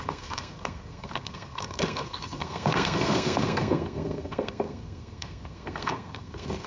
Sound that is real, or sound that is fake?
fake